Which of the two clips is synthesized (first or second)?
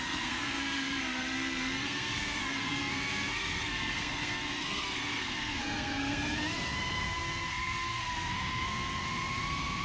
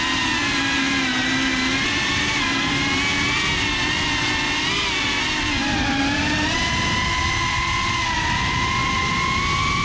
first